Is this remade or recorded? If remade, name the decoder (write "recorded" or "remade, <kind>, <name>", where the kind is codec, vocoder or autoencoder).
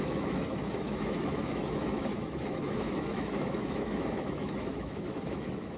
remade, autoencoder, DAC-VAE